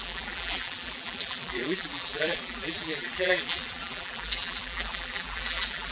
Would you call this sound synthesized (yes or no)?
yes